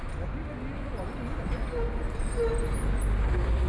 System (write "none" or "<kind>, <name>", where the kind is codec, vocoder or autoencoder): none